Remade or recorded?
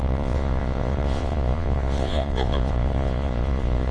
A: remade